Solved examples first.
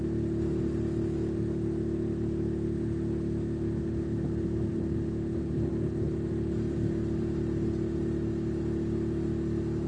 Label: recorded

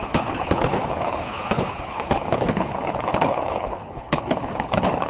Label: remade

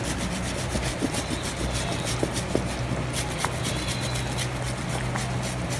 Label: recorded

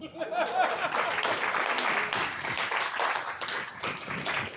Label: recorded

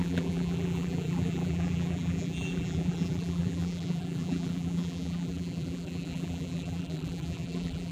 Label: remade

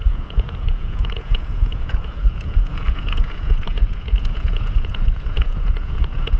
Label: remade